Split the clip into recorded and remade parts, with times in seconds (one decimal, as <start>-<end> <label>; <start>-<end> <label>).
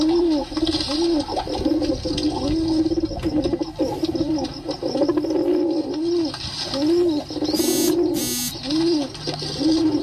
0.0-10.0 recorded